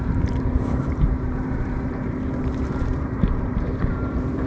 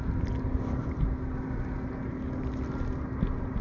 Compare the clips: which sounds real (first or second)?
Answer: second